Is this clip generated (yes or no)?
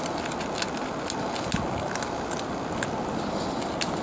no